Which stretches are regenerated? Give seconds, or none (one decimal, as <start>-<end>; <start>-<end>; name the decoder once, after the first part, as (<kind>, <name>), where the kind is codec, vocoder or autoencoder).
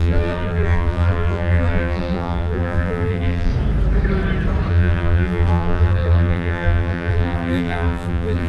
0.0-3.5 (vocoder, BigVGAN v2); 4.7-8.5